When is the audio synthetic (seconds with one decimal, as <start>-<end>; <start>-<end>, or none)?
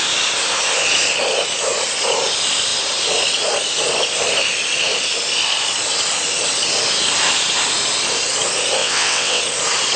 8.8-9.4